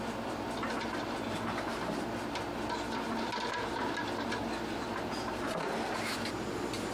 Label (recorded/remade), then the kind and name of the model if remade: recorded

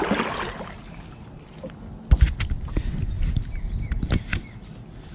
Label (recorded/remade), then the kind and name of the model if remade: recorded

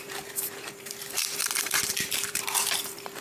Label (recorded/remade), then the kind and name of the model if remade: remade, vocoder, BigVGAN v2